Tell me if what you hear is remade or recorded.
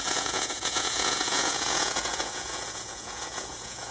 remade